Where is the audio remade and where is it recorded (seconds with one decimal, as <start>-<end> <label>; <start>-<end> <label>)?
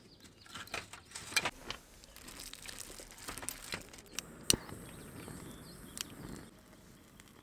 0.0-7.4 recorded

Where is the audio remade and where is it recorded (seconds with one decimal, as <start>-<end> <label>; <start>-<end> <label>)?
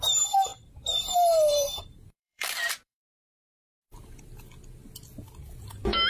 0.0-0.5 recorded; 0.5-4.2 remade; 4.2-6.1 recorded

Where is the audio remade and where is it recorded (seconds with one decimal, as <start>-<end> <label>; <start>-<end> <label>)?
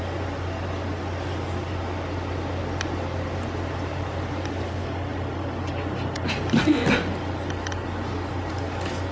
0.0-9.1 recorded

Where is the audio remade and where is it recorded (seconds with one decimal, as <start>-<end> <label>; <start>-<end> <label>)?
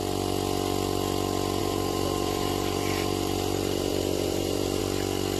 0.0-1.6 recorded; 1.6-4.8 remade; 4.8-5.4 recorded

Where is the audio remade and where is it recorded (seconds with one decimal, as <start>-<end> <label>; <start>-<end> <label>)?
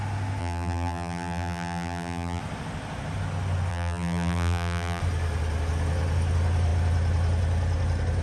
0.0-0.4 recorded; 0.4-2.4 remade; 2.4-3.7 recorded; 3.7-5.0 remade; 5.0-8.2 recorded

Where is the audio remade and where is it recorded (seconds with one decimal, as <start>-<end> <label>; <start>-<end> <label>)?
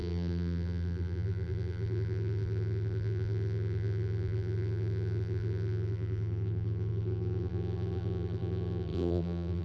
0.0-9.6 remade